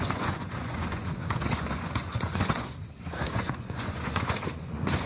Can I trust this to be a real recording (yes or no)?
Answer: no